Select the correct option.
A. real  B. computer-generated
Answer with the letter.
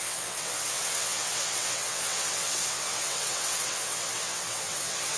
B